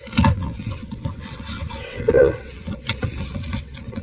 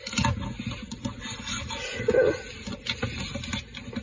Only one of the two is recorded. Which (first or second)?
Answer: second